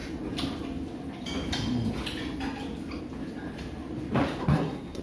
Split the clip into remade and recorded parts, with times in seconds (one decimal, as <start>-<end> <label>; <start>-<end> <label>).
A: 0.0-4.4 recorded; 4.4-5.0 remade